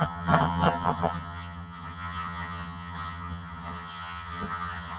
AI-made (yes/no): yes